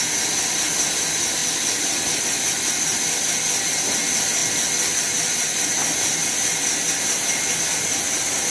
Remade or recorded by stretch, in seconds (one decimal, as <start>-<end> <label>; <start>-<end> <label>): 0.0-5.8 recorded; 5.8-7.1 remade; 7.1-8.5 recorded